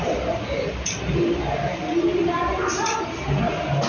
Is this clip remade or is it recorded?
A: recorded